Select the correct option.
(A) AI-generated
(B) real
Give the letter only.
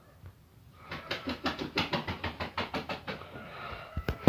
A